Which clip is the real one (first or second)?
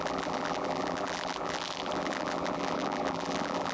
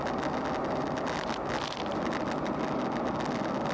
second